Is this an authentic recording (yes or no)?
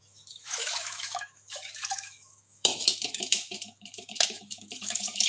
no